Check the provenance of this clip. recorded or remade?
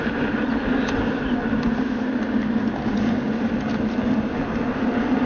recorded